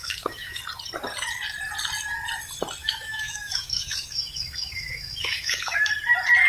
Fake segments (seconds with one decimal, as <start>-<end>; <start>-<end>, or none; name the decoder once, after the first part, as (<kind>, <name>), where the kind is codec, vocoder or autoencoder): 0.0-0.6 (autoencoder, DAC-VAE); 2.8-5.9